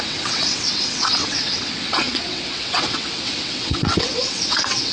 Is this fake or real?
fake